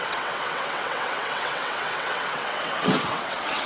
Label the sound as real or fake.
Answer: fake